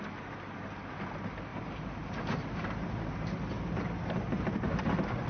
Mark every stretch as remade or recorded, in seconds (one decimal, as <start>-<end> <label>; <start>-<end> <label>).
0.0-1.5 recorded; 1.5-3.3 remade; 3.3-5.3 recorded